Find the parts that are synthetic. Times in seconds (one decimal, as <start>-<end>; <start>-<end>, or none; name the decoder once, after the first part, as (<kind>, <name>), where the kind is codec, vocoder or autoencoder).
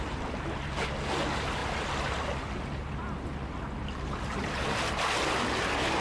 none